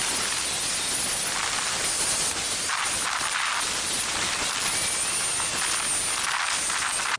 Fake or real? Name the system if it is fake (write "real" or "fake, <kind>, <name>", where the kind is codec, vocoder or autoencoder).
real